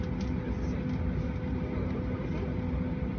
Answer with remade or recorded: recorded